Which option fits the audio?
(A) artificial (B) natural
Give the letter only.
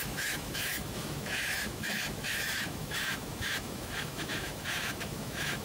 A